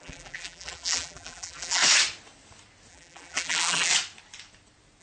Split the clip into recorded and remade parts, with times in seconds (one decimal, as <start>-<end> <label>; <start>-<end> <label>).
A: 0.0-1.8 remade; 1.8-2.9 recorded; 2.9-3.9 remade; 3.9-5.0 recorded